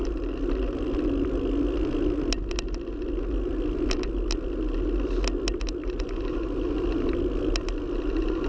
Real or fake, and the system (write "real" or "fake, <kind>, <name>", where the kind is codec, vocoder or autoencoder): real